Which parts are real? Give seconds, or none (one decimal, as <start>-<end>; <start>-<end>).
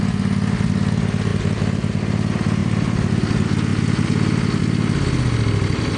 0.0-1.3; 2.0-2.6; 3.1-6.0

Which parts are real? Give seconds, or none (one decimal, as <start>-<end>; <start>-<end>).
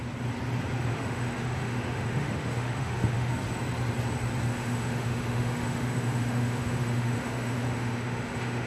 0.0-0.9; 3.3-4.5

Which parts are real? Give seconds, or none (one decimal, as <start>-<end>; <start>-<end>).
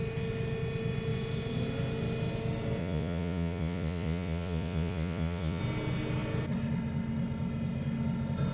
0.0-2.8; 5.6-8.5